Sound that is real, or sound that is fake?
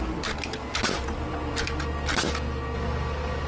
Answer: real